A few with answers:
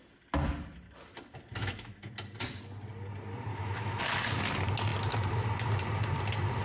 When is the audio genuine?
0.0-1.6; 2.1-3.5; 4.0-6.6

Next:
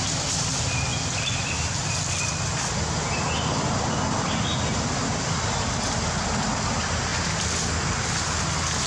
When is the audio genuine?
0.0-8.9